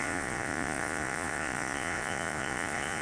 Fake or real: fake